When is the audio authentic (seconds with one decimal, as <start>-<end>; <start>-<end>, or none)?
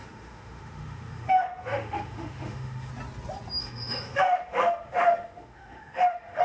2.9-3.6